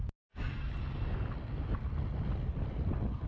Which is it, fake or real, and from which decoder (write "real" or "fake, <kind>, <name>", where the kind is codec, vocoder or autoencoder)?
real